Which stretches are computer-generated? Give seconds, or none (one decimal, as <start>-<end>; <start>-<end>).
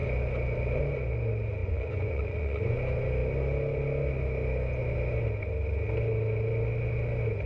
1.6-2.8